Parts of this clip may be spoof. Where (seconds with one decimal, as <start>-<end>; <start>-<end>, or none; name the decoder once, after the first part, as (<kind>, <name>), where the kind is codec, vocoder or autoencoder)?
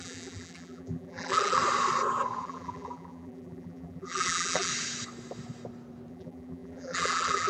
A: 0.0-1.6 (vocoder, BigVGAN v2); 2.4-4.7; 6.1-7.5